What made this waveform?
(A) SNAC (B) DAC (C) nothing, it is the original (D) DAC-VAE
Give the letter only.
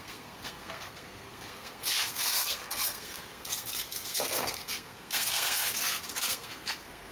A